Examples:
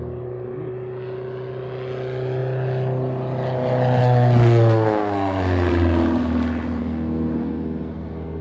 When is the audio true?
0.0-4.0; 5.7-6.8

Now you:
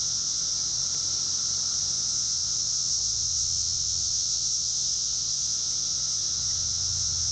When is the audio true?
0.8-1.9